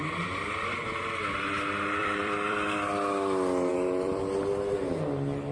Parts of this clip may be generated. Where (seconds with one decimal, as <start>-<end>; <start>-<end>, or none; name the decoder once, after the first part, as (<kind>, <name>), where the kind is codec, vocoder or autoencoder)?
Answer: 2.0-2.9 (vocoder, BigVGAN v2); 3.7-4.2